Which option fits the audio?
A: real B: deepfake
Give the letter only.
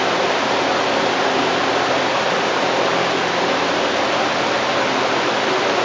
A